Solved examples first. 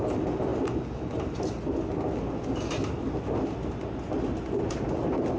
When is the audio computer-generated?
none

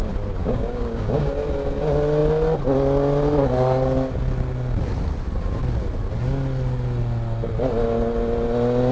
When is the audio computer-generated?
0.4-1.3 (codec, DAC)

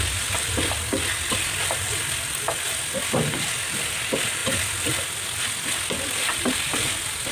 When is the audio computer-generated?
none

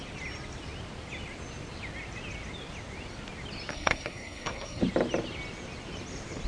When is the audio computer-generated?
3.7-4.8 (codec, SNAC)

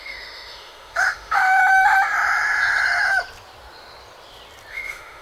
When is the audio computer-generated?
0.0-1.6 (autoencoder, DAC-VAE); 4.7-5.2

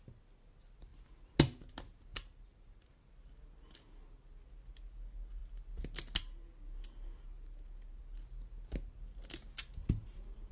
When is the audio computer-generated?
2.1-2.9 (vocoder, BigVGAN v2); 9.8-10.5